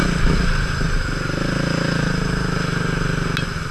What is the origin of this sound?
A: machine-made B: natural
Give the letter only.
B